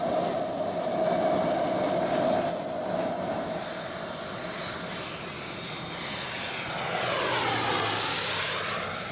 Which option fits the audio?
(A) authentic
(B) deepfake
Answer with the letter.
A